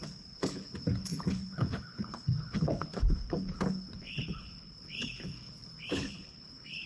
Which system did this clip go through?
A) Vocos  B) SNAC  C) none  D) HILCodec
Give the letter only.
D